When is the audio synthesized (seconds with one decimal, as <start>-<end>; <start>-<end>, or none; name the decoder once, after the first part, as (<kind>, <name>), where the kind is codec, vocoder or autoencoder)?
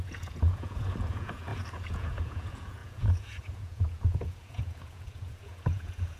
0.0-6.2 (vocoder, Vocos)